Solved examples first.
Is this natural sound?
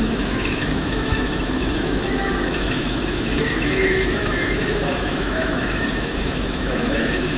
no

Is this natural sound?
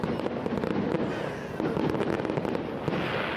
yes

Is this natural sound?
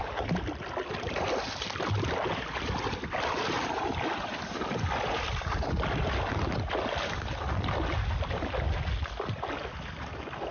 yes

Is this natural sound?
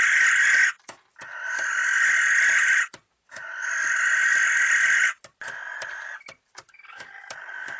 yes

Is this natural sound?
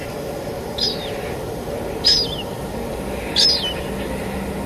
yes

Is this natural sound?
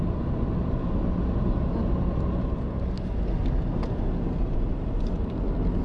yes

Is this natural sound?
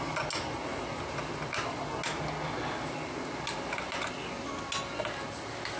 yes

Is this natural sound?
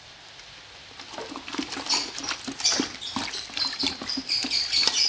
no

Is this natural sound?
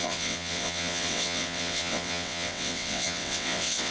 no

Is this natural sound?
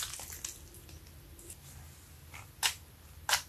yes